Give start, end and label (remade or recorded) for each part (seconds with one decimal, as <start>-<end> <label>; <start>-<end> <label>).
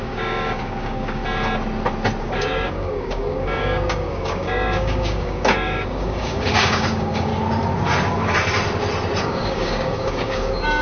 0.0-1.2 remade; 1.2-2.2 recorded; 2.2-7.3 remade; 7.3-9.2 recorded; 9.2-10.8 remade